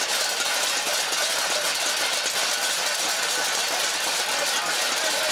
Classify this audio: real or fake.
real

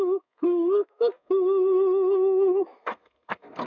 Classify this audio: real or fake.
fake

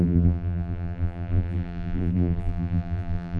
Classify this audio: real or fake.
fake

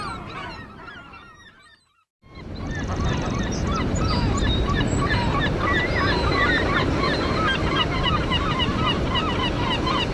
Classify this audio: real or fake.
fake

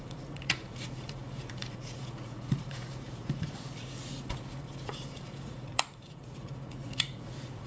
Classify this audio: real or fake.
fake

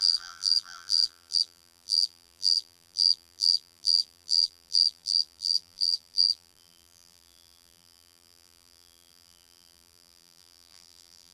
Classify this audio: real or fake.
fake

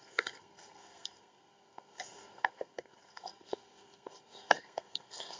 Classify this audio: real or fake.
fake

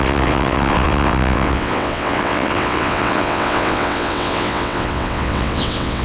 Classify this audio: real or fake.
fake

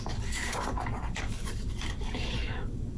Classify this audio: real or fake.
fake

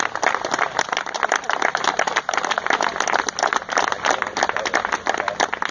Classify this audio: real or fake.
real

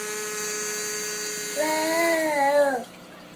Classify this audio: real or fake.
real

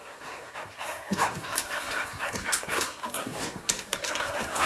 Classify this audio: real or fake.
fake